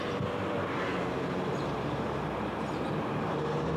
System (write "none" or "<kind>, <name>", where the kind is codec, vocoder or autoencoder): vocoder, BigVGAN v2